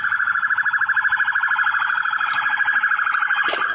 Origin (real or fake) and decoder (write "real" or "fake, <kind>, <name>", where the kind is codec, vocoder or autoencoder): real